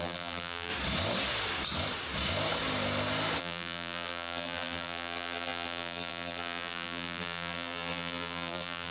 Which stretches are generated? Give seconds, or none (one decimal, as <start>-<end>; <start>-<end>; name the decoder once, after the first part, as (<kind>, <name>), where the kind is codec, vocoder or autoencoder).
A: 0.0-0.7 (vocoder, BigVGAN v2); 3.4-8.9